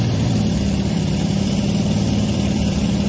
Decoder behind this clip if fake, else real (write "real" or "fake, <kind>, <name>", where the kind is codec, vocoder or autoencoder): fake, vocoder, BigVGAN v2